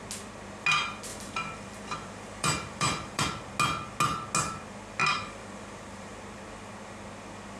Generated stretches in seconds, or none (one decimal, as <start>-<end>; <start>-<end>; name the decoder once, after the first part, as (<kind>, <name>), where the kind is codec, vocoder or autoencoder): 1.1-3.2 (vocoder, BigVGAN v2); 5.0-6.2